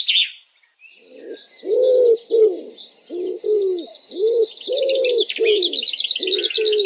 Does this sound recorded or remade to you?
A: recorded